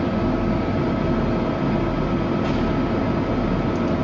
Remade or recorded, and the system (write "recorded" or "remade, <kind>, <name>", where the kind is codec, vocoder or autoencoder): recorded